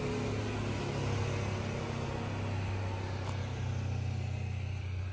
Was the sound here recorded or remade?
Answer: recorded